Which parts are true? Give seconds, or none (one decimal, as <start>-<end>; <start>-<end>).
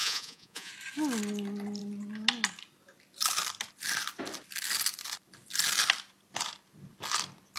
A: 0.7-7.6